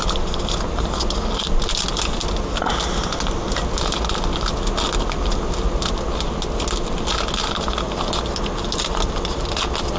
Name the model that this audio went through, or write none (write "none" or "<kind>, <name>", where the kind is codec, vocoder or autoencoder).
none